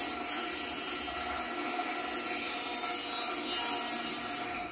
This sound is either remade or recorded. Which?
recorded